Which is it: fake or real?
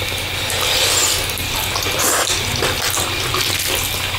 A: real